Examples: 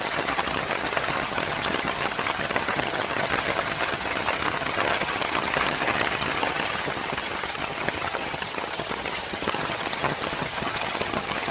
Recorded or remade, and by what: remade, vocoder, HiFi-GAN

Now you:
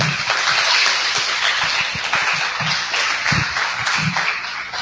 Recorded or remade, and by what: recorded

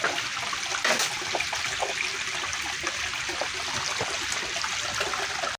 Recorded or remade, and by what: recorded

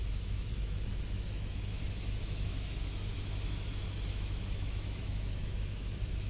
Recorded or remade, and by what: remade, autoencoder, DAC-VAE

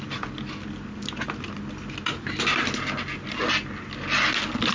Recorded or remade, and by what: recorded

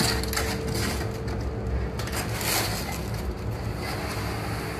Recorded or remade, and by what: recorded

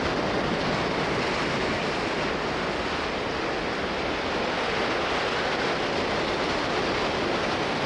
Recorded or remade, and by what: recorded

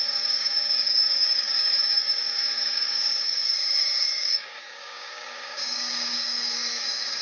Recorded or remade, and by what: remade, codec, DAC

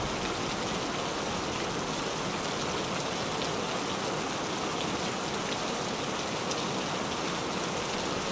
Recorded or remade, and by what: recorded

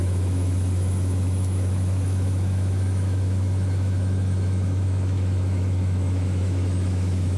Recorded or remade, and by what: remade, autoencoder, DAC-VAE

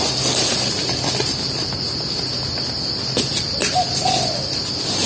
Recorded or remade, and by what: recorded